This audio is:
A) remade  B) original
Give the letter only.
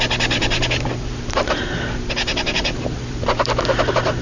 A